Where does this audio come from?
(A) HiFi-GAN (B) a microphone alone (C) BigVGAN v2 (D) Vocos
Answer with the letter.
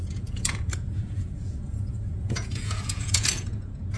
D